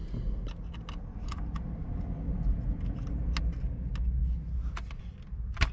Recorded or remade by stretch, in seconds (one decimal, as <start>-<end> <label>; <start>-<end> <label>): 0.0-5.7 recorded